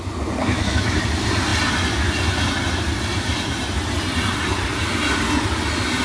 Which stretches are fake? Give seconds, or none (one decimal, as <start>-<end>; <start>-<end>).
0.4-1.0